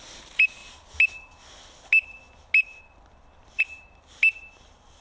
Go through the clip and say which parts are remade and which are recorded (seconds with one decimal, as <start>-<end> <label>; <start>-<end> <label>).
0.0-5.0 recorded

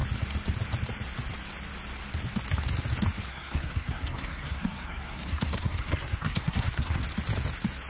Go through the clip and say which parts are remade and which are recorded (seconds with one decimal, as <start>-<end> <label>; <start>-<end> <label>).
0.0-3.3 recorded; 3.3-7.0 remade; 7.0-7.9 recorded

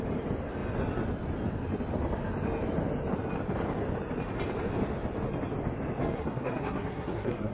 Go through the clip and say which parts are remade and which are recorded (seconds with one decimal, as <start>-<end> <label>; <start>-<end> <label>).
0.0-6.0 recorded; 6.0-7.5 remade

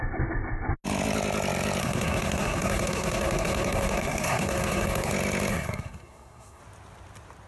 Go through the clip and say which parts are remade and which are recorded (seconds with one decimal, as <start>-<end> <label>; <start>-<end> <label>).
0.0-1.8 recorded; 1.8-5.1 remade; 5.1-5.5 recorded; 5.5-6.6 remade; 6.6-7.5 recorded

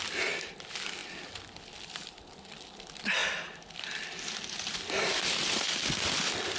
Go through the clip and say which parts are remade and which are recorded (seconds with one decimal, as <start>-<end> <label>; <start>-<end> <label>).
0.0-6.6 recorded

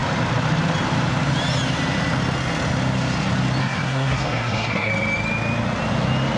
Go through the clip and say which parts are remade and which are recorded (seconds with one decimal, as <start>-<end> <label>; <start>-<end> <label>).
0.0-3.6 recorded; 3.6-4.9 remade; 4.9-6.4 recorded

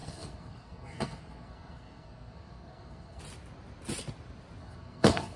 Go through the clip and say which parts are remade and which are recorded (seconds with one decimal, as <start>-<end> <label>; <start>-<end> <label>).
0.0-3.2 remade; 3.2-4.6 recorded; 4.6-5.4 remade